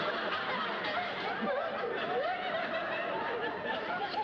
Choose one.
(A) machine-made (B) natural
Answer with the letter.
B